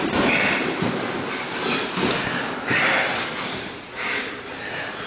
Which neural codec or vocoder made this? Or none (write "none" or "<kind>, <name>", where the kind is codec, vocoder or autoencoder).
none